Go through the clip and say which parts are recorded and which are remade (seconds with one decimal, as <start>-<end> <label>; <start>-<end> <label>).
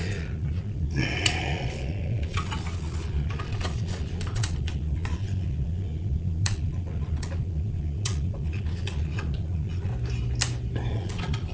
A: 0.0-9.9 remade; 9.9-10.9 recorded; 10.9-11.5 remade